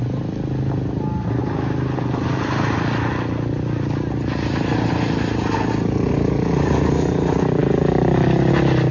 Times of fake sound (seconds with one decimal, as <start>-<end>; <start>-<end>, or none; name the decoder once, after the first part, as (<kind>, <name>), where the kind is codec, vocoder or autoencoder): none